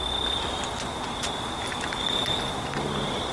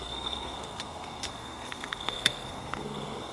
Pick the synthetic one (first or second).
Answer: second